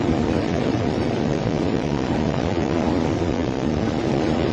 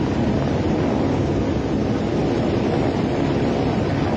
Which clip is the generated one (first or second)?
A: first